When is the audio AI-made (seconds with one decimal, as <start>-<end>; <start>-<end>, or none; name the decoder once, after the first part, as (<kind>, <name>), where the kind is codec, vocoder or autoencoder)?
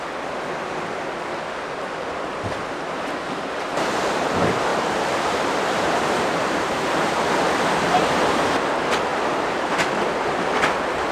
4.7-7.1 (vocoder, BigVGAN v2)